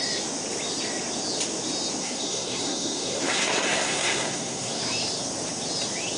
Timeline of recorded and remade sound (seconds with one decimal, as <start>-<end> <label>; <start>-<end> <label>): 0.0-2.0 recorded; 2.0-4.8 remade; 4.8-6.2 recorded